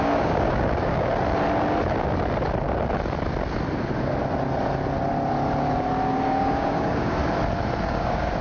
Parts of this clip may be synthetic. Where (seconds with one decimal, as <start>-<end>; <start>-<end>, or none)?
0.0-1.1; 6.1-7.2; 7.8-8.4